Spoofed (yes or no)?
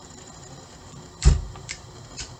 yes